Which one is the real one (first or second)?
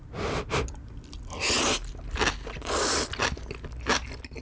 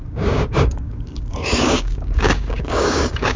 first